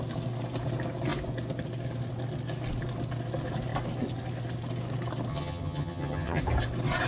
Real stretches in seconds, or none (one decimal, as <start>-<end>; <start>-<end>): 0.0-5.3; 6.4-7.1